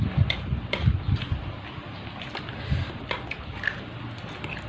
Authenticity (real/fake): real